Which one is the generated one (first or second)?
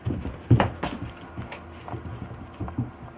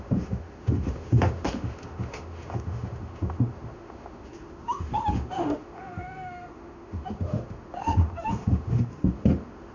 second